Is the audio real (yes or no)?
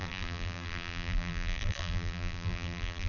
no